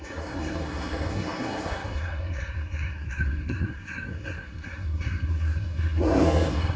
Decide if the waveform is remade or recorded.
remade